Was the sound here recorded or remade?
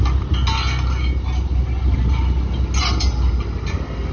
recorded